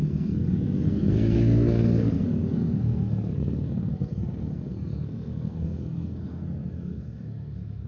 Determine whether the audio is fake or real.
fake